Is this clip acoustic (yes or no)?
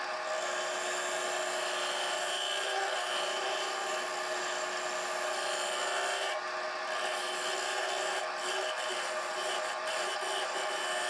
yes